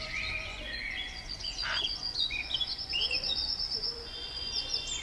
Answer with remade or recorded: remade